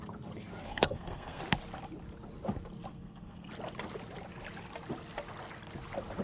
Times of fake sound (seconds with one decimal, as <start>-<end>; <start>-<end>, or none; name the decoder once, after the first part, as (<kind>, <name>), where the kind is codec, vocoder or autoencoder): 0.7-1.4 (codec, SNAC); 2.9-3.5